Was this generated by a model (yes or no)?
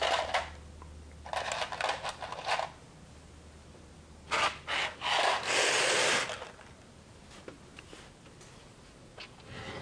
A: no